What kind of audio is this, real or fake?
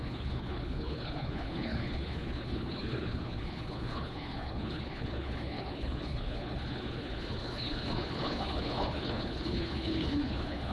fake